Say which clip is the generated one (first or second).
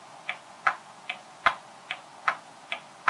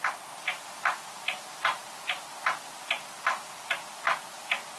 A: first